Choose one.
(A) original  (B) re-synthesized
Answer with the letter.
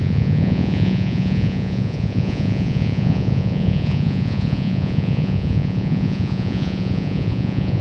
B